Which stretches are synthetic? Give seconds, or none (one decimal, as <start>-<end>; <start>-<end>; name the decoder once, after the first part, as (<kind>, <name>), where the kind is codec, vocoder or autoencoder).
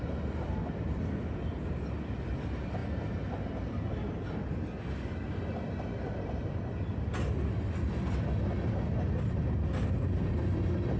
none